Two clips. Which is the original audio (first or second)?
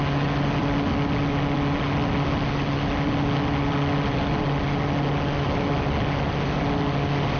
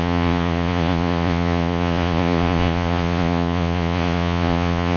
first